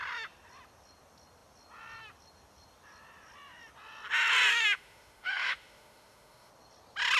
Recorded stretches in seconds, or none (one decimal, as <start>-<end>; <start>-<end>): 0.0-4.5; 6.5-7.2